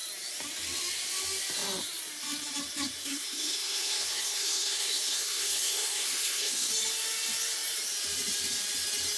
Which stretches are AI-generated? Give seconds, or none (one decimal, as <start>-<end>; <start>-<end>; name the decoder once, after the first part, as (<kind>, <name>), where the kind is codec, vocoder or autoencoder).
3.0-6.7 (codec, SNAC)